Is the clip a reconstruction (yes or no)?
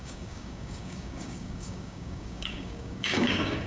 yes